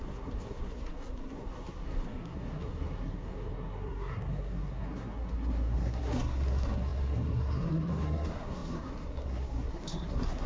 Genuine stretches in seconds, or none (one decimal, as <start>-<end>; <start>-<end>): none